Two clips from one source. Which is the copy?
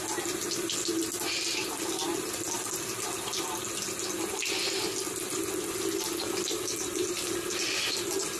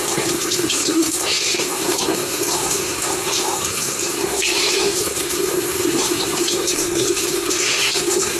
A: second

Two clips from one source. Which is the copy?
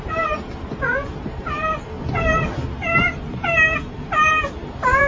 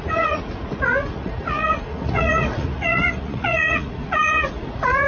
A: second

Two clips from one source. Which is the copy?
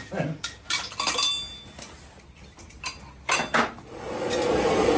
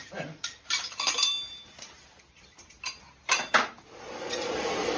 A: second